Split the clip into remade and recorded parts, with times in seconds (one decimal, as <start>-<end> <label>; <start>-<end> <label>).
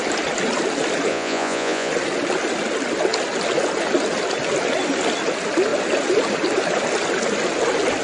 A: 0.0-1.1 recorded; 1.1-1.9 remade; 1.9-8.0 recorded